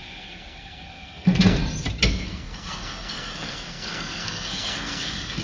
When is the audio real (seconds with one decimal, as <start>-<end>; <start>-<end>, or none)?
1.6-2.1